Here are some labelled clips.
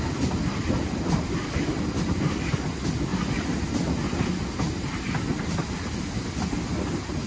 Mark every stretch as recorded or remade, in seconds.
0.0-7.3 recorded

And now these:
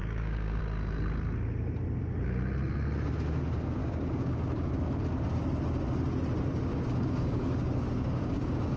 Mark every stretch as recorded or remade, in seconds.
0.0-0.6 remade; 0.6-3.8 recorded; 3.8-4.7 remade; 4.7-6.7 recorded; 6.7-8.8 remade

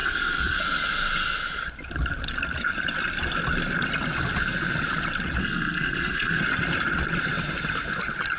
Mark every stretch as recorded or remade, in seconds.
0.0-0.6 remade; 0.6-5.4 recorded; 5.4-6.4 remade; 6.4-8.4 recorded